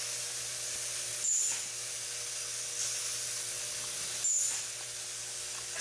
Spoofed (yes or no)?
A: no